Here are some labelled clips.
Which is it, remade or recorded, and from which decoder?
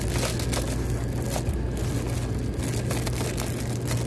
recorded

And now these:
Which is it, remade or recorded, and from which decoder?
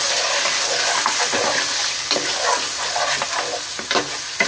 recorded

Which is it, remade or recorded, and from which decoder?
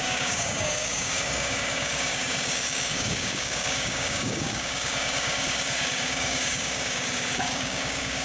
remade, codec, DAC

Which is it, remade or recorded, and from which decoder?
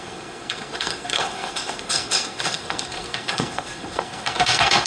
remade, codec, SNAC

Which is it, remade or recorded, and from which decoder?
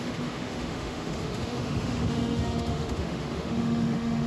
remade, autoencoder, DAC-VAE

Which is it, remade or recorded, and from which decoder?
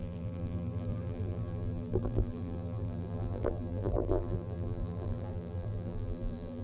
remade, vocoder, BigVGAN v2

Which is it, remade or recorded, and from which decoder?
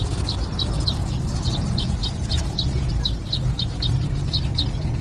recorded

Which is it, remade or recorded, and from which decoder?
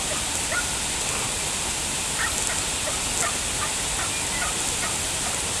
recorded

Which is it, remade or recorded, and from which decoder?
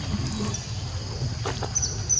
recorded